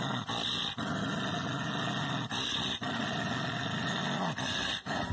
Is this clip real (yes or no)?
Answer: yes